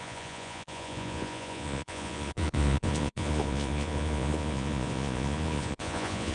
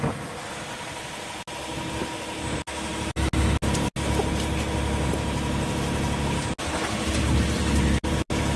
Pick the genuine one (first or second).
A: second